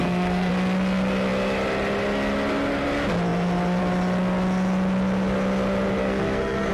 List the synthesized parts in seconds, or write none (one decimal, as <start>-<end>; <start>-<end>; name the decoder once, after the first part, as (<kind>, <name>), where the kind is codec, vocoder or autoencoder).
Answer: 0.0-0.5 (codec, SNAC); 6.0-6.7